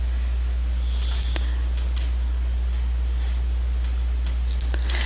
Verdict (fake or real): real